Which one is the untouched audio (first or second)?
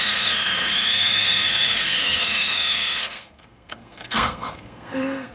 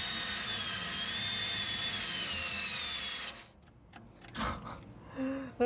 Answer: second